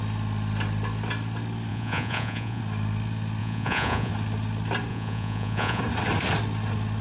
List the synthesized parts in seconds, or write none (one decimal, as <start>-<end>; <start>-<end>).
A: 1.7-2.6; 3.4-4.1; 4.9-5.8